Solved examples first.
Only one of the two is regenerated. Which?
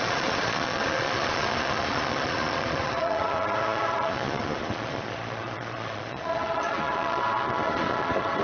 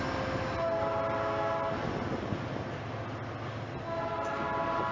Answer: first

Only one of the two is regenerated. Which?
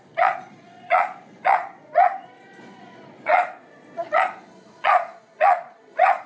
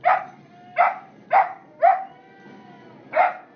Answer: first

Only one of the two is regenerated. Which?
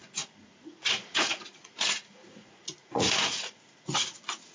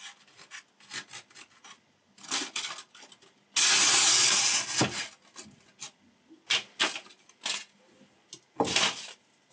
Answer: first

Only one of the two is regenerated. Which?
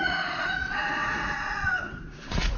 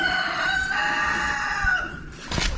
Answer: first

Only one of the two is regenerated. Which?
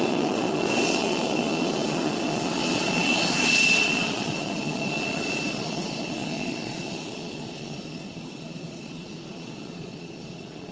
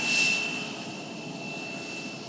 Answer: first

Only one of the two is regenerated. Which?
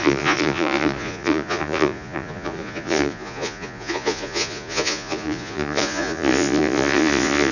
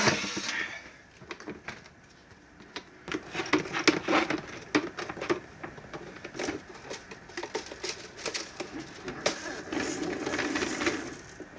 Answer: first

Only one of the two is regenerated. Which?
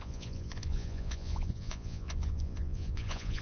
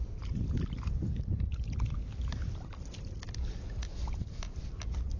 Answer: first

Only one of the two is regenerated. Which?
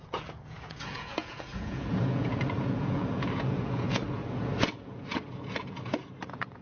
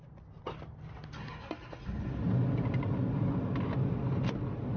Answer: first